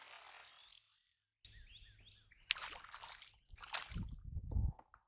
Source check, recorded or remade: recorded